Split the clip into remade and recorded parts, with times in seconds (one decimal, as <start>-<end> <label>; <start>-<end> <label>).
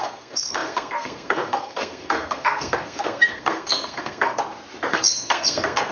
0.0-4.4 remade; 4.4-4.9 recorded; 4.9-5.9 remade